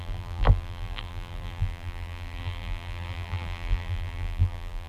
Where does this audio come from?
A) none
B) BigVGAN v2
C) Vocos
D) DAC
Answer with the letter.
B